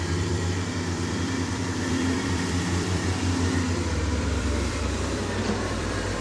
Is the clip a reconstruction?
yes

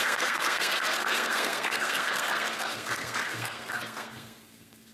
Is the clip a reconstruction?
yes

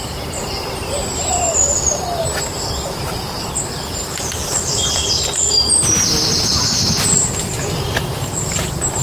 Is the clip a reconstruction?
yes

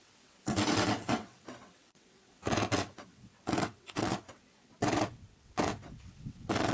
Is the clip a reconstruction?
yes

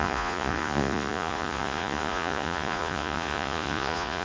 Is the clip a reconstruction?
yes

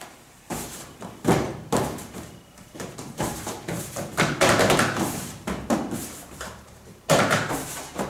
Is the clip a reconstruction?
yes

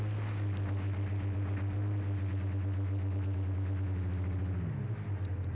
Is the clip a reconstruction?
no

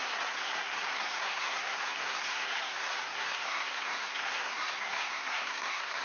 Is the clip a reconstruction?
yes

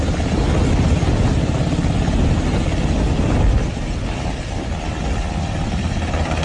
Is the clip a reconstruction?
no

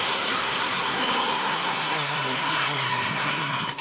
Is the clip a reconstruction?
yes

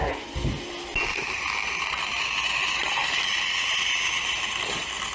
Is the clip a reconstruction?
no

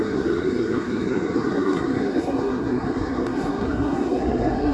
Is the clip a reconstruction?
yes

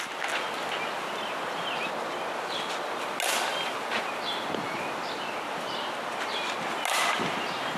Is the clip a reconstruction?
no